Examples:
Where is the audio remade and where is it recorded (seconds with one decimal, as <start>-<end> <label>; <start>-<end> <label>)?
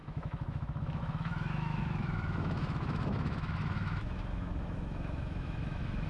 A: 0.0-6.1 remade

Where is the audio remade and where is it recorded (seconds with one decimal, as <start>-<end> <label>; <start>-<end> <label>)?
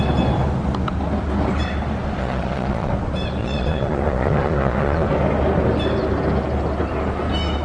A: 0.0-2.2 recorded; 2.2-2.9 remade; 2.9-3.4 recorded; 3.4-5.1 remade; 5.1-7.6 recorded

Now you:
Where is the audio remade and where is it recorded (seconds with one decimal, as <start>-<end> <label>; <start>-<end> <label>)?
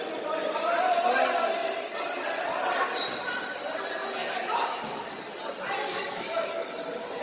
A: 0.0-4.0 recorded; 4.0-5.2 remade; 5.2-5.9 recorded; 5.9-6.7 remade; 6.7-7.2 recorded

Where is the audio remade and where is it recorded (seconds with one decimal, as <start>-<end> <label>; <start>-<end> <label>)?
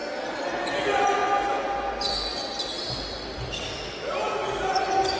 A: 0.0-5.2 recorded